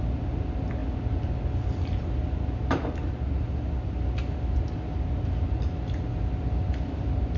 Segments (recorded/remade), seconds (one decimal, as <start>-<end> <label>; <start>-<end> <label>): 0.0-7.4 recorded